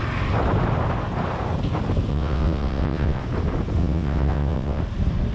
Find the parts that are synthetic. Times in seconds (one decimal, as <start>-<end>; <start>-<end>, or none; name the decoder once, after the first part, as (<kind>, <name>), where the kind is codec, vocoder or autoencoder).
2.1-3.2 (vocoder, WaveNeXt); 3.8-4.8